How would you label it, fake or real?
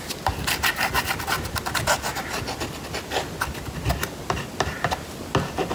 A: real